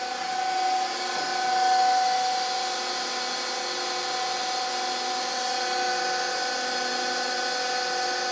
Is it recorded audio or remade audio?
recorded